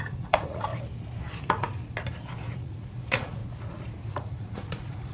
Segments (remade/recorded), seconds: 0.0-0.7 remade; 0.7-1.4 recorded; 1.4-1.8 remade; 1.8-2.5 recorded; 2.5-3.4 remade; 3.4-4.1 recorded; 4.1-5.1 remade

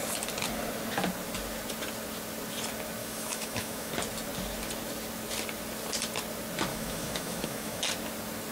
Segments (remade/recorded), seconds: 0.0-3.0 recorded; 3.0-3.9 remade; 3.9-6.7 recorded; 6.7-7.8 remade; 7.8-8.5 recorded